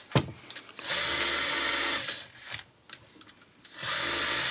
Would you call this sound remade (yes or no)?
no